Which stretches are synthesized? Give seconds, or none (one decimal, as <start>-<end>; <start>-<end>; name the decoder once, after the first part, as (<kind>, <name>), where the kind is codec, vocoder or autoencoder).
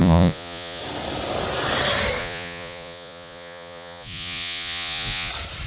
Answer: 0.0-0.8 (vocoder, Vocos); 2.2-5.3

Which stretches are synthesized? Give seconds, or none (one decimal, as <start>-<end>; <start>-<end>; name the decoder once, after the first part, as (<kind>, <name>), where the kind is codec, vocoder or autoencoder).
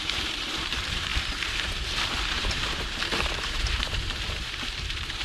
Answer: 0.0-5.2 (vocoder, BigVGAN v2)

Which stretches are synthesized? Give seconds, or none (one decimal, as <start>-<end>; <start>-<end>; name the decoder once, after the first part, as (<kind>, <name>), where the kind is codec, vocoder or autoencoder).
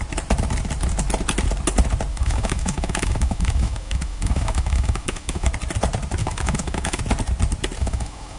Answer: 2.1-5.5 (autoencoder, DAC-VAE); 6.2-7.0; 7.8-8.4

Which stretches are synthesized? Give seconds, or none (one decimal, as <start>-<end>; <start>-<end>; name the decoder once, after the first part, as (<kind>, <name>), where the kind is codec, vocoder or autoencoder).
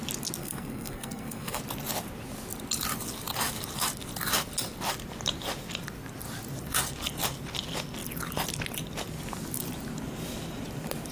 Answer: 0.4-1.6 (codec, SNAC)